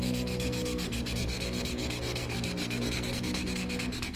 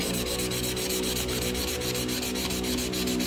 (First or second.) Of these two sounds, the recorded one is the second